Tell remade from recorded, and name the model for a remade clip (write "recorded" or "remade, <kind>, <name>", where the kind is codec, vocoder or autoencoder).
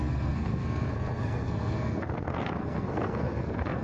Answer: remade, codec, SNAC